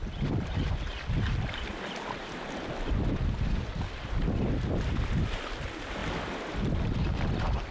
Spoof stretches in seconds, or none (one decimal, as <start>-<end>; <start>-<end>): none